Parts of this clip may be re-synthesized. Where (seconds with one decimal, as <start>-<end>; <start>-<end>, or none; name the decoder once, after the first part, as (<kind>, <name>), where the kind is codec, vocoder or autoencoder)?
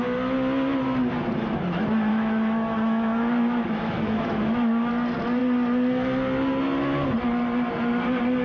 2.1-4.9 (autoencoder, DAC-VAE)